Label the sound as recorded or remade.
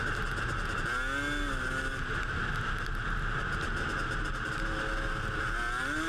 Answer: recorded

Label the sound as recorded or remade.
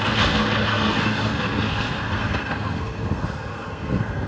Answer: remade